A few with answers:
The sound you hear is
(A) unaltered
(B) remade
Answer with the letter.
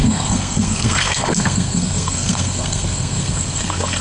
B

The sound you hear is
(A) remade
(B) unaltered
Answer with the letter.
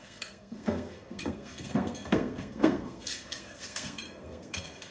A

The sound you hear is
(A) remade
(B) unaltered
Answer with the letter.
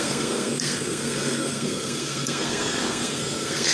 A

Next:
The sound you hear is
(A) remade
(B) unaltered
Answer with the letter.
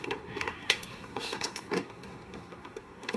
A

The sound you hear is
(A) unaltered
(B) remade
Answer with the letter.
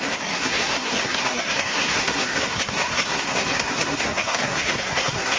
B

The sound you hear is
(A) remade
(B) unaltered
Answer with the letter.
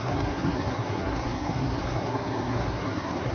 A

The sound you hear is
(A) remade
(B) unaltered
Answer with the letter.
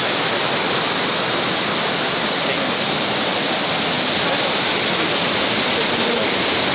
B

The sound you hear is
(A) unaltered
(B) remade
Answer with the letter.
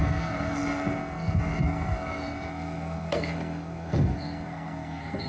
B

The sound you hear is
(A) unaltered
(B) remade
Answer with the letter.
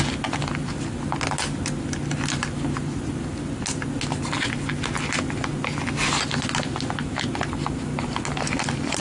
A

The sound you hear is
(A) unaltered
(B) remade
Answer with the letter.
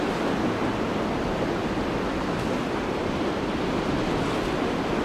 A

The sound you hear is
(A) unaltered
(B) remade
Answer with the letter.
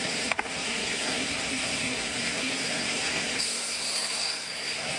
B